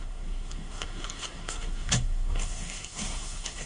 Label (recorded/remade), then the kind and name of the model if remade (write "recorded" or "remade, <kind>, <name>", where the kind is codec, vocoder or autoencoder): remade, codec, SNAC